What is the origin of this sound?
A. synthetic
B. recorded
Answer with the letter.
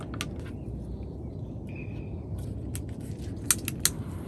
B